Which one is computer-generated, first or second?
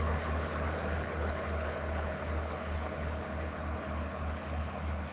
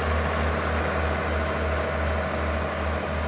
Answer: first